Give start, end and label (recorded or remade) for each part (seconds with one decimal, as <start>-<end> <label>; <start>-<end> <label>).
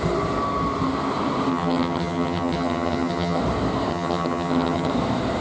0.0-1.5 recorded; 1.5-3.4 remade; 3.4-3.9 recorded; 3.9-4.9 remade; 4.9-5.4 recorded